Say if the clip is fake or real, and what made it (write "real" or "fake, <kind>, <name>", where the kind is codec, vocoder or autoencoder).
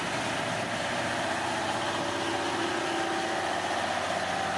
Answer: real